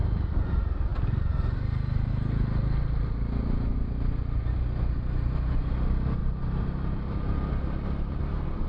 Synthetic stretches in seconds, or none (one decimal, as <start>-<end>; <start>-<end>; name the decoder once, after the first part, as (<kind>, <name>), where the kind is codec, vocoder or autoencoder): 6.2-8.2 (vocoder, BigVGAN v2)